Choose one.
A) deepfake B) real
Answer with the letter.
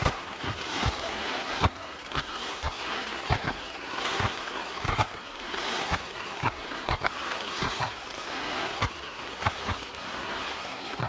A